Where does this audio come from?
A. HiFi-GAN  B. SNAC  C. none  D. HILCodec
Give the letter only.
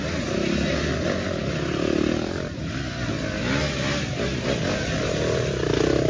C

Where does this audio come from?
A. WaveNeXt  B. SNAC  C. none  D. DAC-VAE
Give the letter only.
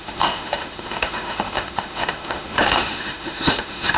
D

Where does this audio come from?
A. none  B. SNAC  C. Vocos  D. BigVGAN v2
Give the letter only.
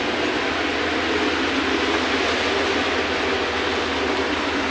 A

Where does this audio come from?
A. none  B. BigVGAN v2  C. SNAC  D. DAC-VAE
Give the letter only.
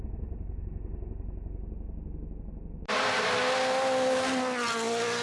A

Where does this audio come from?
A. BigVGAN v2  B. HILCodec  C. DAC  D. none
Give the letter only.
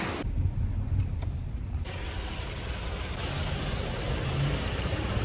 D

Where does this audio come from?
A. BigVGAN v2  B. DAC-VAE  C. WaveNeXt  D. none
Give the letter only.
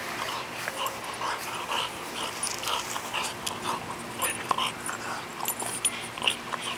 D